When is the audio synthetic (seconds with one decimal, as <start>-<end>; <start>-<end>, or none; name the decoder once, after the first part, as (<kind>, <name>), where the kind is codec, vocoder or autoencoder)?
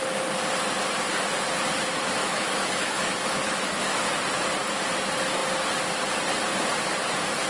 2.2-4.0 (autoencoder, DAC-VAE)